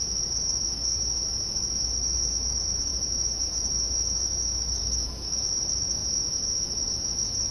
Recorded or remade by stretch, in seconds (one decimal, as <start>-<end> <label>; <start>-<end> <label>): 0.0-7.5 remade